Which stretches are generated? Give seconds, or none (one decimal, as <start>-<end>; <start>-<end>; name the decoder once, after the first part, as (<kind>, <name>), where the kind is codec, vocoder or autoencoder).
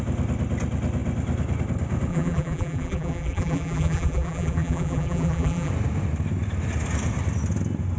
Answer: 2.1-5.7 (vocoder, BigVGAN v2)